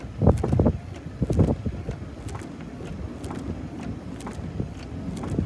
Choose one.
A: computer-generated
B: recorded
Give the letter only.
B